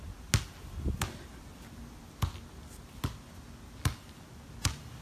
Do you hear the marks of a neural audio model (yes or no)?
no